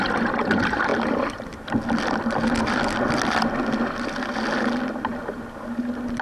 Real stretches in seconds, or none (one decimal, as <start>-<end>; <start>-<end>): 0.0-6.2